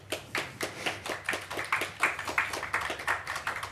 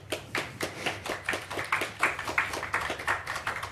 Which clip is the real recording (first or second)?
first